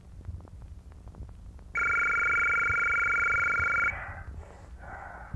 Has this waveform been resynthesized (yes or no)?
no